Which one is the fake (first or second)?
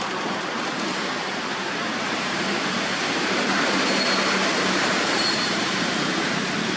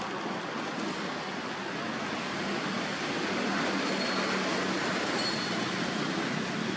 first